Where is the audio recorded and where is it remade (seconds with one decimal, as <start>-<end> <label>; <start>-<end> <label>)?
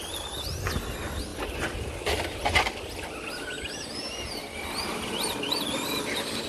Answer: 0.0-1.3 recorded; 1.3-3.0 remade; 3.0-4.4 recorded; 4.4-6.1 remade; 6.1-6.5 recorded